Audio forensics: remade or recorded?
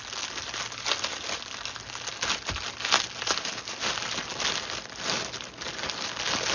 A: recorded